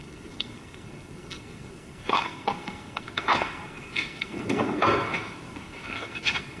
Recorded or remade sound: remade